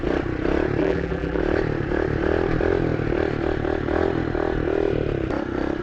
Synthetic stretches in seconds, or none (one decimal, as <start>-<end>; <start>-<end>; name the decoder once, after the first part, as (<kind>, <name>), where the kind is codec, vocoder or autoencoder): 0.8-1.4 (vocoder, BigVGAN v2)